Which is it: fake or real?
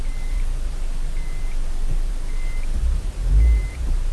fake